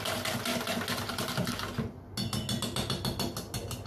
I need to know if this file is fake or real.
real